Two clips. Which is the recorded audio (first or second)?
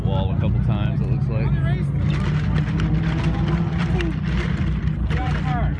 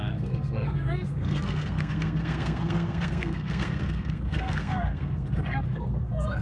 first